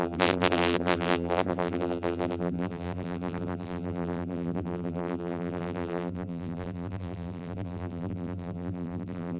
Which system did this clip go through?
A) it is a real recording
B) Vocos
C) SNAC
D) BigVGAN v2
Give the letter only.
D